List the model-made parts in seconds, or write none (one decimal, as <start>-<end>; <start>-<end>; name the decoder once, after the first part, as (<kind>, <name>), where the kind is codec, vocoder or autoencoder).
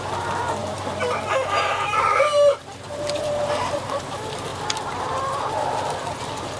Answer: 0.0-4.5 (vocoder, BigVGAN v2); 5.0-6.6